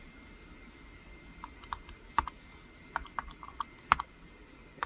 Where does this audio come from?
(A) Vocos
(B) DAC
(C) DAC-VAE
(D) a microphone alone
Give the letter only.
D